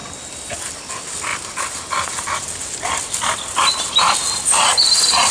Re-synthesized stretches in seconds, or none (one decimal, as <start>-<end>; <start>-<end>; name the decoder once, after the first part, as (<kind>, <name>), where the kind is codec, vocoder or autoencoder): none